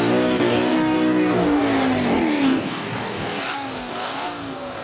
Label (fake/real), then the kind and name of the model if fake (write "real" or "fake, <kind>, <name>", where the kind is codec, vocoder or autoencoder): fake, codec, DAC